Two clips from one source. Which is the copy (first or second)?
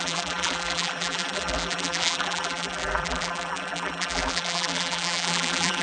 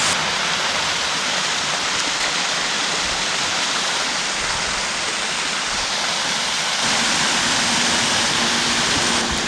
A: first